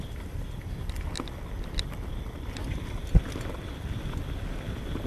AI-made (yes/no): no